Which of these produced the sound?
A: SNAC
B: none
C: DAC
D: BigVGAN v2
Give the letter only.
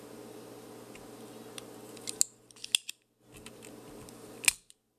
B